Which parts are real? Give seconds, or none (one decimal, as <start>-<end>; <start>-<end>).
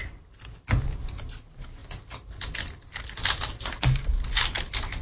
0.0-5.0